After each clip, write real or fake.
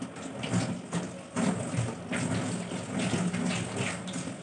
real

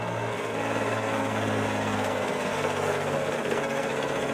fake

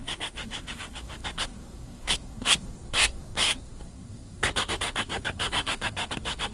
fake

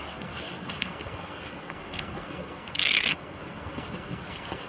fake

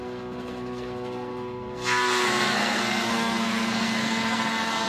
fake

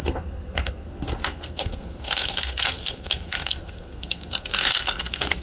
fake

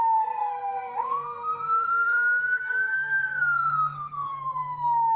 fake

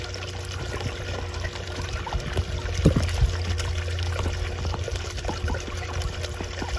real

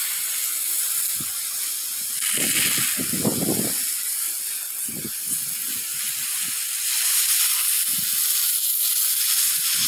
real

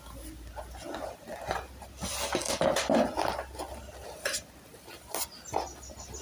real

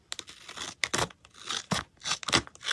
real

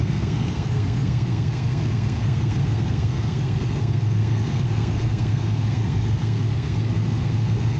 fake